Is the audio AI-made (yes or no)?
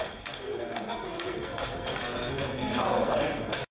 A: yes